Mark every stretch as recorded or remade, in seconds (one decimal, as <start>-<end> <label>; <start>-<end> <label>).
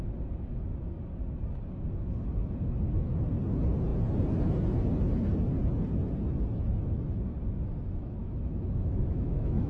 0.0-8.2 recorded; 8.2-9.7 remade